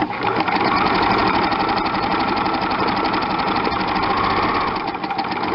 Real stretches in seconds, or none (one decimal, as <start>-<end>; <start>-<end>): 0.0-5.5